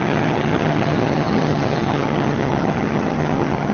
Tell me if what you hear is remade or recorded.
remade